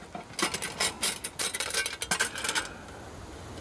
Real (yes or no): yes